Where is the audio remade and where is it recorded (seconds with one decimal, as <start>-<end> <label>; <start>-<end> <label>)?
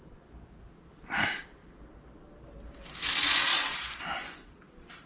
0.0-3.5 recorded; 3.5-4.6 remade; 4.6-5.1 recorded